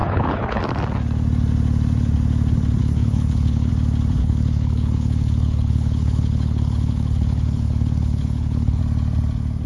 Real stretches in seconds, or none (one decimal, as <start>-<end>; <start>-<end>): 0.6-2.8; 3.7-4.2; 8.8-9.7